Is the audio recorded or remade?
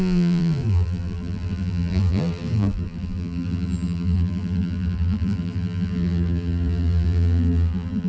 remade